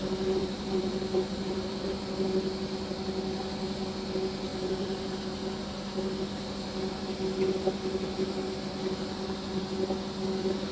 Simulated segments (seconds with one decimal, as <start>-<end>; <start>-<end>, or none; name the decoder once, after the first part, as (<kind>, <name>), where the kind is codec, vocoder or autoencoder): 0.4-2.1 (vocoder, BigVGAN v2); 4.5-5.3

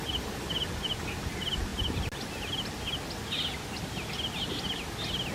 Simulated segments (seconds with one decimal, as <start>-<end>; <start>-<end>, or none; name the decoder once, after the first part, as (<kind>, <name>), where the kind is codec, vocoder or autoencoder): none